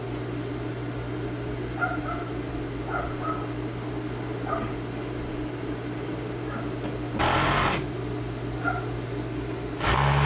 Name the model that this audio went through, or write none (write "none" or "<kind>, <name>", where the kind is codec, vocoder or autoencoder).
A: none